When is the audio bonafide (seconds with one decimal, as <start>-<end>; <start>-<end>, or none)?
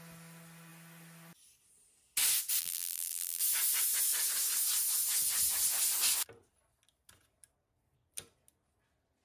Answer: 0.0-2.6; 3.4-9.2